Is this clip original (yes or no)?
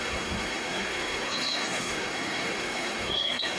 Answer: no